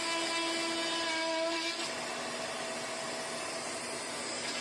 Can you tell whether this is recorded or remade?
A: recorded